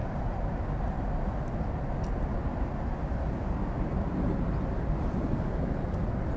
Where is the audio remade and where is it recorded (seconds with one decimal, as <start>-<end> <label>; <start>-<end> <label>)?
0.0-6.4 recorded